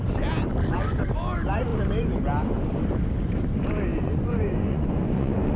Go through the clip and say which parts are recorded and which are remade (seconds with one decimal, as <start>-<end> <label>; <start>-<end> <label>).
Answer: 0.0-3.9 recorded; 3.9-5.6 remade